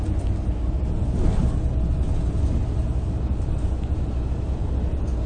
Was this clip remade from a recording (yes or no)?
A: no